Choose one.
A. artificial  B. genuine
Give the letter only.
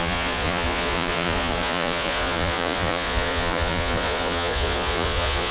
A